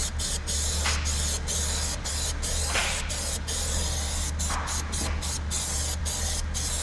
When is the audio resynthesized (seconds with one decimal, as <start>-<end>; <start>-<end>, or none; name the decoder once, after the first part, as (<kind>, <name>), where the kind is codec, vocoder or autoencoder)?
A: none